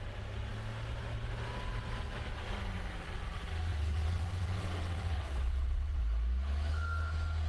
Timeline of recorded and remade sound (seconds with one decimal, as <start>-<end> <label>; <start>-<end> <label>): 0.0-3.7 recorded; 3.7-6.0 remade; 6.0-7.5 recorded